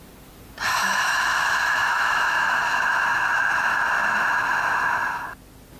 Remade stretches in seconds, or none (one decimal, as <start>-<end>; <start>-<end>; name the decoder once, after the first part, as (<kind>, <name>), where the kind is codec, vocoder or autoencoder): 0.8-2.8 (autoencoder, DAC-VAE)